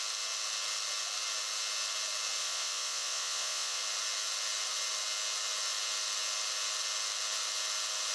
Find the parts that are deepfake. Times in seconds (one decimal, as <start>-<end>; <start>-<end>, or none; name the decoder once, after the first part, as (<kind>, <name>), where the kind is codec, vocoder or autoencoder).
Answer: 2.4-3.8 (vocoder, Vocos)